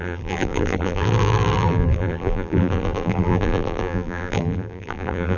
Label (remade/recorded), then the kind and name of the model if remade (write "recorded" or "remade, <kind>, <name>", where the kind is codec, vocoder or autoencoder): remade, vocoder, BigVGAN v2